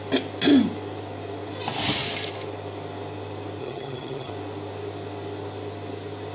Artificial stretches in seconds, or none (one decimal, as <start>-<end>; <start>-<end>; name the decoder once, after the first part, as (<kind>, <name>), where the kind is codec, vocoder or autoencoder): 3.6-4.3 (vocoder, HiFi-GAN)